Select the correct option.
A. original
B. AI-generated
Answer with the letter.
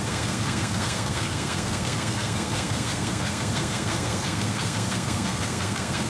B